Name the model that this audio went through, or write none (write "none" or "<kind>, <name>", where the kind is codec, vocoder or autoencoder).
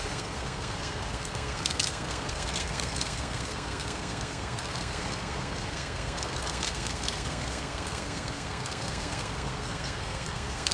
codec, SNAC